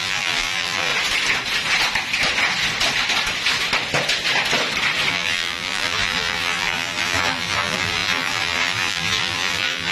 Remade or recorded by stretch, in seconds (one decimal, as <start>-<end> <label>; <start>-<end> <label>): 0.0-0.9 remade; 0.9-5.1 recorded; 5.1-9.9 remade